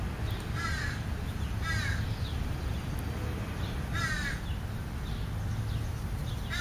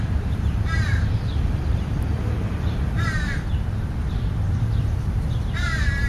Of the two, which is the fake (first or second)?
second